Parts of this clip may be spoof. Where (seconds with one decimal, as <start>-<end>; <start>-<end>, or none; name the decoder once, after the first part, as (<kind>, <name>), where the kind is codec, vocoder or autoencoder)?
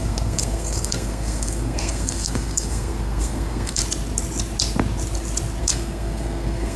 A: 0.0-3.8 (codec, SNAC); 5.6-6.8